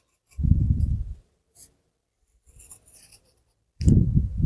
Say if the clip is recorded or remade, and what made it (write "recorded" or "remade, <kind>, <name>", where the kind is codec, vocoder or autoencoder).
remade, vocoder, BigVGAN v2